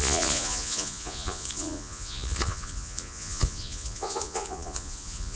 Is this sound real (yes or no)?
no